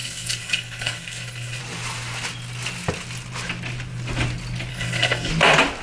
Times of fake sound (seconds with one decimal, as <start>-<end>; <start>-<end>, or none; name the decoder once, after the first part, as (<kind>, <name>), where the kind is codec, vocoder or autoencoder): 0.0-1.6 (codec, SNAC); 4.7-5.3